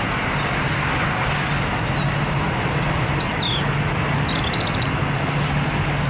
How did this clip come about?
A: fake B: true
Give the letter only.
B